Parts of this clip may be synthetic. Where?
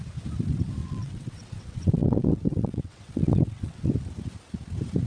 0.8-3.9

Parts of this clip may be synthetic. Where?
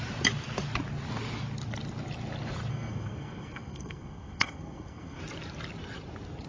2.7-5.2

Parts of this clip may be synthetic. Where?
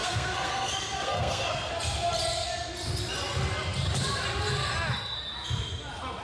0.0-1.7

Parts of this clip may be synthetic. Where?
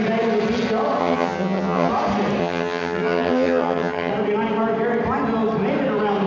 1.0-1.9; 2.4-4.1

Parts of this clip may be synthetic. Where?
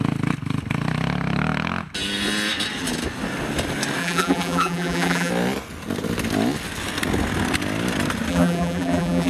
4.0-5.3; 8.3-9.3